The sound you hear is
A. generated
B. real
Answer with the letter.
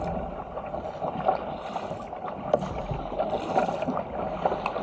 B